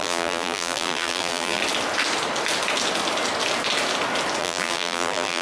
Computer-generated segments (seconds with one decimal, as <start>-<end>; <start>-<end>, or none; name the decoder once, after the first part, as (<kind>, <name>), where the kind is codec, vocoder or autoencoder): 0.0-1.6 (vocoder, BigVGAN v2); 4.4-5.4